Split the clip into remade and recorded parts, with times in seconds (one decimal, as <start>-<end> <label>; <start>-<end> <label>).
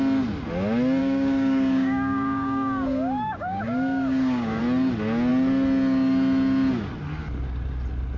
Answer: 0.0-1.0 recorded; 1.0-4.6 remade; 4.6-8.2 recorded